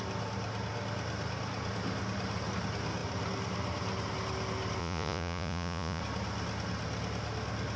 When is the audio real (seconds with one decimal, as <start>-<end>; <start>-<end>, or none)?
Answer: 0.0-4.8; 6.0-7.8